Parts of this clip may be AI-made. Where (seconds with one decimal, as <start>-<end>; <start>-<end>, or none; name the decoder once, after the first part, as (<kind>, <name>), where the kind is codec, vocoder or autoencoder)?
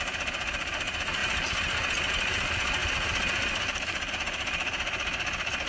none